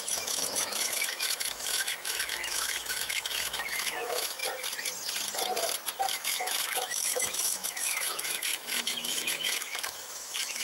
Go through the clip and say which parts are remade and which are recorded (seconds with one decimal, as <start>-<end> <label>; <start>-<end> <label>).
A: 0.0-4.4 remade; 4.4-6.1 recorded; 6.1-10.6 remade